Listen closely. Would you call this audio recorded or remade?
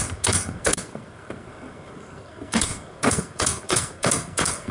remade